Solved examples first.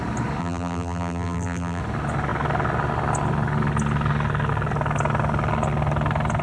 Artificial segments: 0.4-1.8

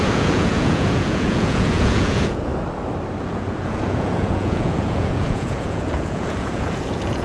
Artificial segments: 0.0-2.5; 3.2-7.2